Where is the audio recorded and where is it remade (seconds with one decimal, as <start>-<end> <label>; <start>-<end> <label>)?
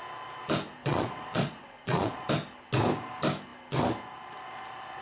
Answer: 0.0-0.8 recorded; 0.8-2.3 remade; 2.3-5.0 recorded